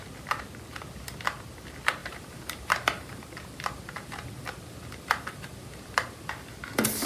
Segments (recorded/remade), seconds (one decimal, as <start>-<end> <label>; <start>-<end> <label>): 0.0-2.0 recorded; 2.0-6.3 remade; 6.3-7.1 recorded